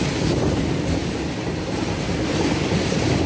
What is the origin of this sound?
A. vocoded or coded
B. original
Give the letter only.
B